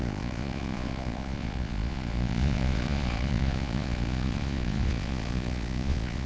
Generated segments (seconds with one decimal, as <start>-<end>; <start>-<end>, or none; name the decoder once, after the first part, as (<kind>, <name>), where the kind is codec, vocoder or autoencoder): 0.0-6.3 (vocoder, Vocos)